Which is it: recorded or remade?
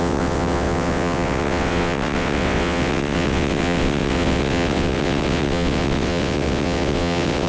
remade